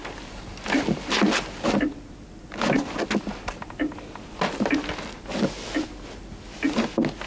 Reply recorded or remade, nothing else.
recorded